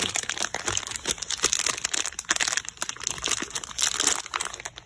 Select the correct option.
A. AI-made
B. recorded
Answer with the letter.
B